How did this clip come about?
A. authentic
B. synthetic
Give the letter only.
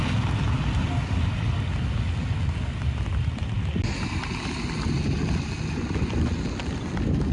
A